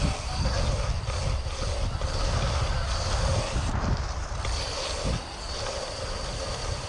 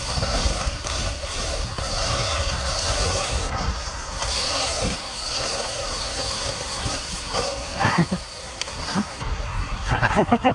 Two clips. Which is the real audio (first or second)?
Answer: first